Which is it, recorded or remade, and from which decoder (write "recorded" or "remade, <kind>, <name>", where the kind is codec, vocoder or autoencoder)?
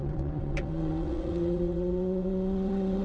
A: remade, vocoder, WaveNeXt